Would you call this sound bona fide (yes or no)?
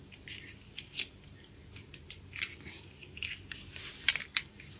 no